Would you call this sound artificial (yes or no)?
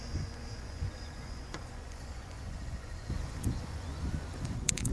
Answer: yes